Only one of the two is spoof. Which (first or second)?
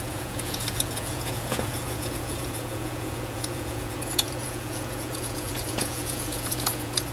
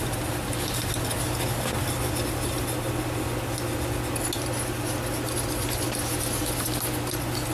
first